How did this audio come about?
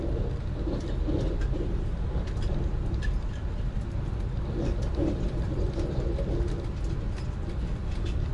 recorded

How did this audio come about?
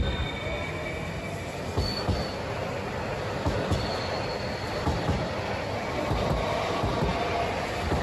recorded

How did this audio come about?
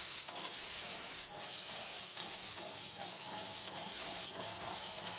remade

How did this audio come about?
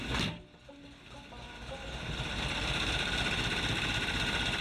recorded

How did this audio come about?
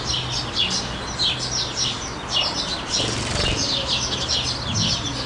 recorded